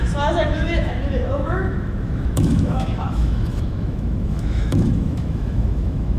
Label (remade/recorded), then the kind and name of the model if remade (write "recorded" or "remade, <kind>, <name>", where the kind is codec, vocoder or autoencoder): remade, autoencoder, DAC-VAE